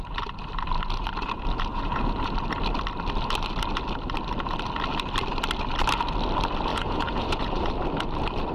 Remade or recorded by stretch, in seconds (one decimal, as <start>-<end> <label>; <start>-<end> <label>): 0.0-1.7 recorded; 1.7-2.3 remade; 2.3-6.7 recorded; 6.7-7.7 remade; 7.7-8.5 recorded